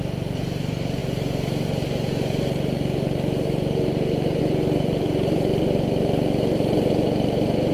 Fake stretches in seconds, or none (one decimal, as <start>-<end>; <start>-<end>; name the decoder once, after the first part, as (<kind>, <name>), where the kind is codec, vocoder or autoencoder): 0.0-7.7 (vocoder, BigVGAN v2)

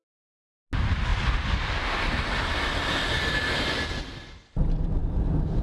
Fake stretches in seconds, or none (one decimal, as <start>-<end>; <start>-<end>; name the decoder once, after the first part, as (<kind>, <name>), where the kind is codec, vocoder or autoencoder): none

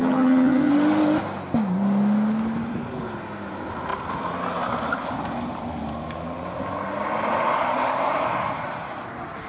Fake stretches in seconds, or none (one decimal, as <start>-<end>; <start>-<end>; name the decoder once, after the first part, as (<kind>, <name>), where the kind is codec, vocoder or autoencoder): 0.0-0.7 (vocoder, HiFi-GAN)

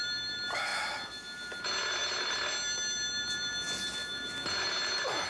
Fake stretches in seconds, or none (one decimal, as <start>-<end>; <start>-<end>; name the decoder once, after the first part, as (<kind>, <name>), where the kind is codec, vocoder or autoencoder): none

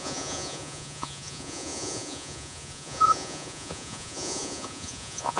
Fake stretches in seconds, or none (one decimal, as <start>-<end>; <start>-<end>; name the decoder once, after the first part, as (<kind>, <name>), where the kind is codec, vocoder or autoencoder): 0.0-5.4 (vocoder, Vocos)

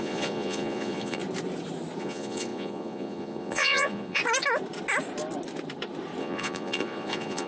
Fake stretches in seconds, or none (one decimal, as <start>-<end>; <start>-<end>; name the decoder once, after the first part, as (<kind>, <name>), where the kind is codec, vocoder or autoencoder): 0.0-1.2 (vocoder, Vocos); 2.0-4.2; 6.2-7.5